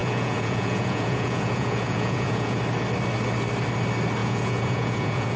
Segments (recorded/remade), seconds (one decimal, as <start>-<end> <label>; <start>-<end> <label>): 0.0-2.6 remade; 2.6-4.2 recorded; 4.2-5.4 remade